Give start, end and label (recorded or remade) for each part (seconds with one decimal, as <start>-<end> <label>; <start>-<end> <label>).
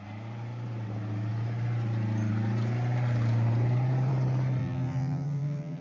0.0-4.6 recorded; 4.6-5.8 remade